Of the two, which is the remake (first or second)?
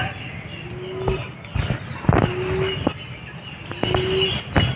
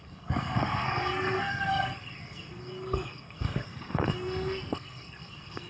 second